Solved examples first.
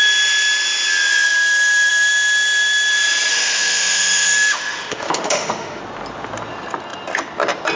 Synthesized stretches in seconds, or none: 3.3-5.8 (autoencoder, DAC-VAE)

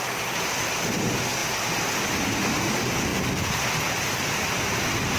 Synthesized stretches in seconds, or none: 3.1-4.2 (vocoder, BigVGAN v2)